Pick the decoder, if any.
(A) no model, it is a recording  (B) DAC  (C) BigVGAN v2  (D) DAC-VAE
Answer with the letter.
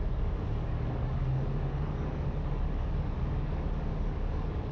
B